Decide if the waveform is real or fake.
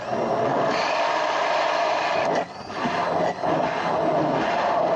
real